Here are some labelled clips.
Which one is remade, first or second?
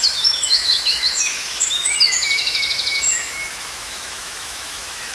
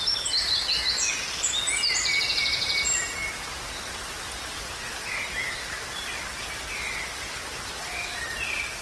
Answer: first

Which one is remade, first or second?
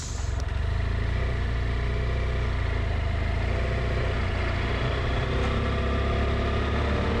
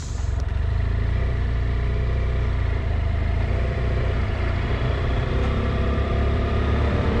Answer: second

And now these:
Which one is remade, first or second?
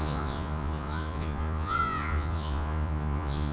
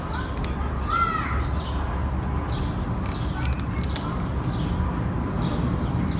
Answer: first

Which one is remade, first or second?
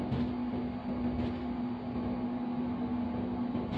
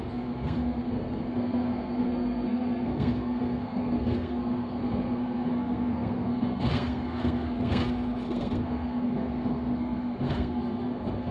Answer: second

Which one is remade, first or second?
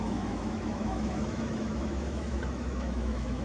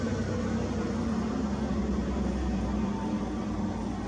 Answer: first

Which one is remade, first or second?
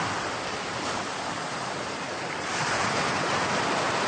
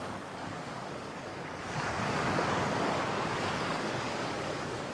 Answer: second